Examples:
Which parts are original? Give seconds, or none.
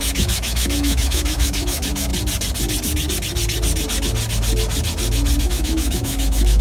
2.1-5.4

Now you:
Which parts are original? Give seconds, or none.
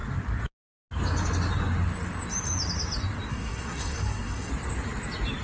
0.0-3.3; 4.5-5.4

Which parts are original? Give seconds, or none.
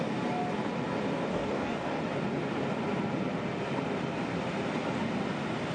0.0-1.3; 2.0-5.7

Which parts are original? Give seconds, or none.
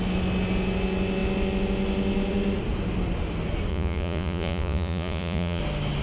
0.0-3.7; 5.6-6.0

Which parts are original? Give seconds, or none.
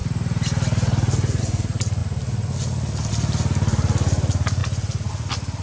0.0-5.6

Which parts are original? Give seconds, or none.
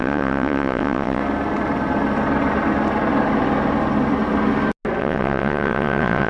1.2-5.0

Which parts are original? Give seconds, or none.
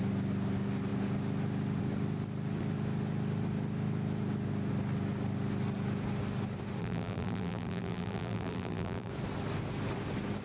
0.0-6.8; 9.1-10.4